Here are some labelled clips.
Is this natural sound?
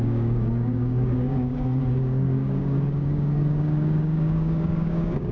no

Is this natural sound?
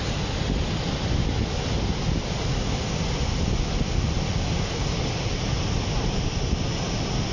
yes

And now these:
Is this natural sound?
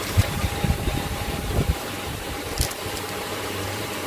no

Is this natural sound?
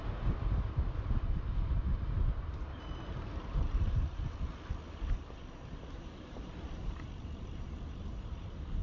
no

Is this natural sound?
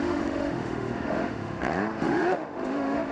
no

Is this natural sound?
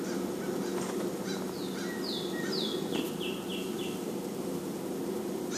yes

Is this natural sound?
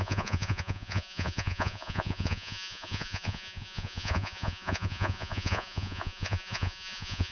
no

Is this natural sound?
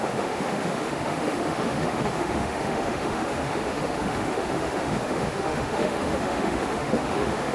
no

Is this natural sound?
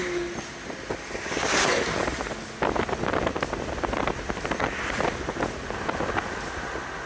yes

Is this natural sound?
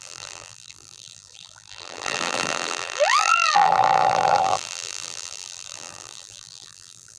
no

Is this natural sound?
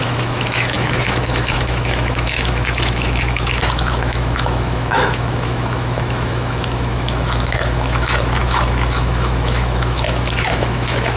no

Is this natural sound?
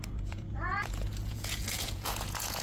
no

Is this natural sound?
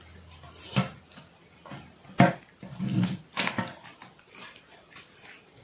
yes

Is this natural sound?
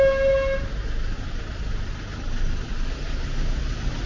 yes